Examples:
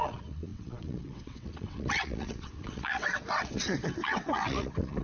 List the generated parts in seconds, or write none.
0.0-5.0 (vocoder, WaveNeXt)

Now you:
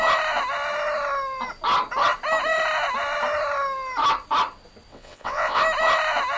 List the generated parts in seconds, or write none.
4.9-5.6 (vocoder, WaveNeXt)

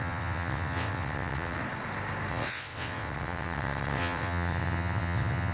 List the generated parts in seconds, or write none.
0.0-1.6 (vocoder, WaveNeXt); 2.3-5.5

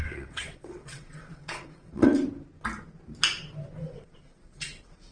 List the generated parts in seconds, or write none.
0.0-2.1 (vocoder, WaveNeXt); 3.8-5.1

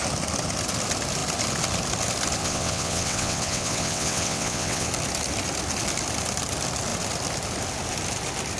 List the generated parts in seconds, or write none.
2.4-4.9 (vocoder, WaveNeXt)